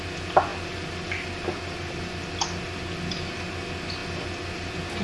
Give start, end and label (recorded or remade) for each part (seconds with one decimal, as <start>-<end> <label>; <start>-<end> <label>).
0.0-5.0 recorded